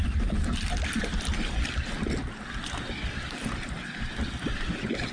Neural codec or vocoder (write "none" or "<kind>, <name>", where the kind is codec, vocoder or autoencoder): none